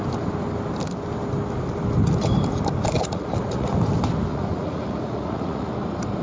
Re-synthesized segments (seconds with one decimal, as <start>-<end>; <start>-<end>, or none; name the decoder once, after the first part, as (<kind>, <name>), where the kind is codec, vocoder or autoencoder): 3.0-3.7 (vocoder, Vocos); 4.3-5.7